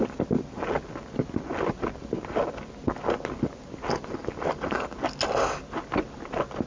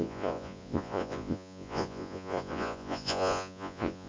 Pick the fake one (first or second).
second